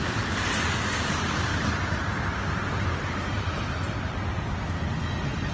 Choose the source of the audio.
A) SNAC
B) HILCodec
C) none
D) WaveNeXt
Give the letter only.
C